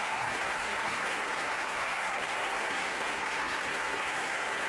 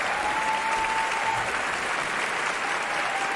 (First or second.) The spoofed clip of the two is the first